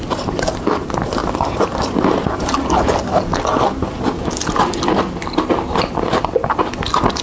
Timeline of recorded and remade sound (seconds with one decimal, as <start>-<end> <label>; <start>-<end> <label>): 0.0-7.2 recorded